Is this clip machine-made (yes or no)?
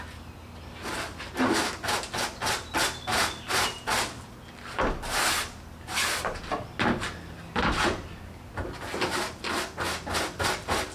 no